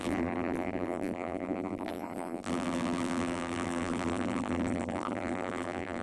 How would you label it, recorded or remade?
remade